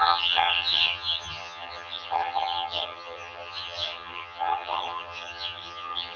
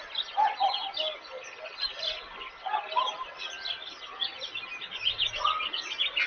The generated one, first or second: first